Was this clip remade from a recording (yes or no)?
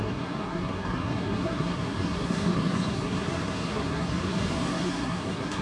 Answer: yes